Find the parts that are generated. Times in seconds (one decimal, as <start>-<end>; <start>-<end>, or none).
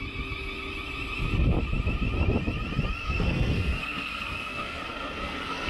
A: 3.0-5.7